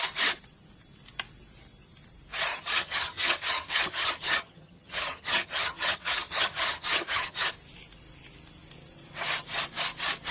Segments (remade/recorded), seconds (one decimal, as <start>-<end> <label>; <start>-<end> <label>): 0.0-2.5 recorded; 2.5-7.5 remade; 7.5-10.3 recorded